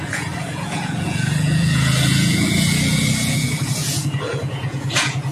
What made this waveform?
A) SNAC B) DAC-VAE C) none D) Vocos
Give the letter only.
D